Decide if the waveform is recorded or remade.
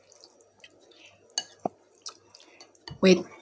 recorded